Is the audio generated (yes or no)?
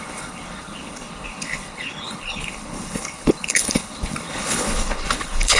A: yes